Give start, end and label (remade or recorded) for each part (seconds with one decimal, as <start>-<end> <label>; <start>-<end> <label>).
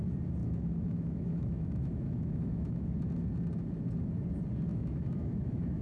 0.0-0.4 recorded; 0.4-3.1 remade; 3.1-4.7 recorded; 4.7-5.8 remade